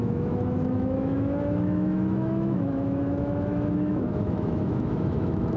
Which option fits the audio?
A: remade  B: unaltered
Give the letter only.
A